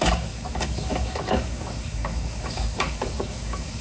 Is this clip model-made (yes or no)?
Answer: yes